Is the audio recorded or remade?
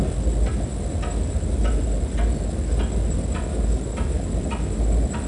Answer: recorded